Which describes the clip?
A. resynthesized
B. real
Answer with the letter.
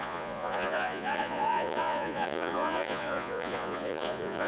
A